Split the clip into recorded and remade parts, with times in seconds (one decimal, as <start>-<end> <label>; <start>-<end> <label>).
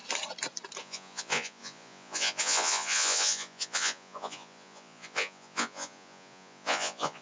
0.0-0.8 recorded; 0.8-7.2 remade